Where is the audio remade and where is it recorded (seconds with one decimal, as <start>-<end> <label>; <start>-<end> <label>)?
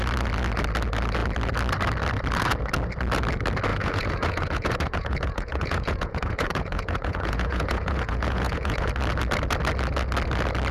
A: 0.0-3.7 recorded; 3.7-8.9 remade; 8.9-10.7 recorded